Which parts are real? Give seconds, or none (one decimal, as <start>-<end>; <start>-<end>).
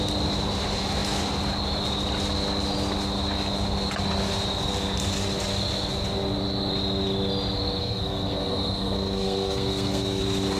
0.0-7.8; 10.2-10.6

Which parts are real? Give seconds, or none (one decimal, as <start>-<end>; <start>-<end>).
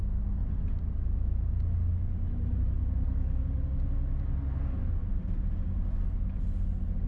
0.0-7.1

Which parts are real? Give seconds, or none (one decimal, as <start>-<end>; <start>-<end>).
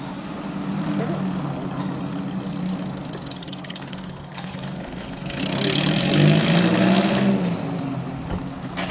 0.0-3.4; 5.4-8.9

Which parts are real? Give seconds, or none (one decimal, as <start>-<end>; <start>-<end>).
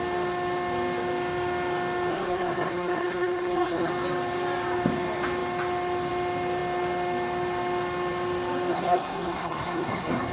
0.0-2.1; 3.9-8.7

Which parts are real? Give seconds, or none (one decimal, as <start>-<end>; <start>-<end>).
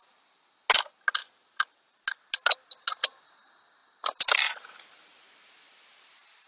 0.0-6.5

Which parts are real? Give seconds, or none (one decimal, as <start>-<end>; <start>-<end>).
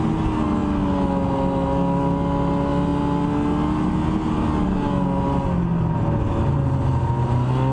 0.0-7.7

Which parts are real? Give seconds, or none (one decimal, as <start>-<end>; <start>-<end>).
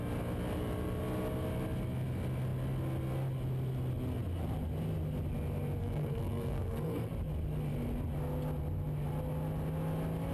0.0-5.8; 7.1-10.3